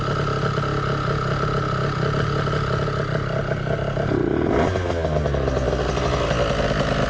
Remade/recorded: recorded